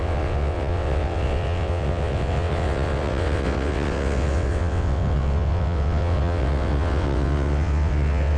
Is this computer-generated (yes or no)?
yes